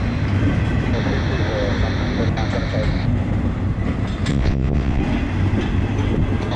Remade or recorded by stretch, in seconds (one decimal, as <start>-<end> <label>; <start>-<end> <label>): 0.0-4.3 recorded; 4.3-5.0 remade; 5.0-6.6 recorded